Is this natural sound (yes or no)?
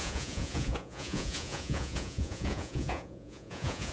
no